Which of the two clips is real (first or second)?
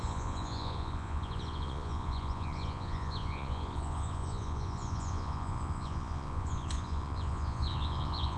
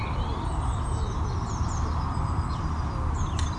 second